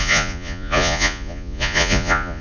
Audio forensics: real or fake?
fake